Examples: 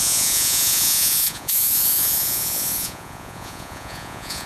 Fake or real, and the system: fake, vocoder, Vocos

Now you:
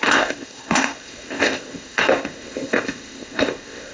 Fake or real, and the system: fake, codec, ZipCodec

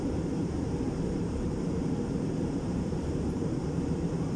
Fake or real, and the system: fake, vocoder, BigVGAN v2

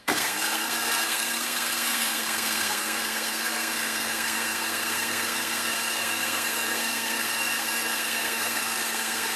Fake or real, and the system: fake, codec, SNAC